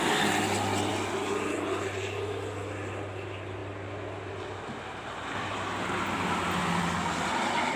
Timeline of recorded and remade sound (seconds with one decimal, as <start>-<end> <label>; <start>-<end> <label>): 0.0-7.8 recorded